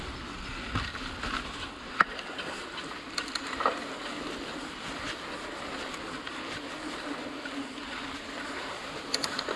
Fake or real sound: real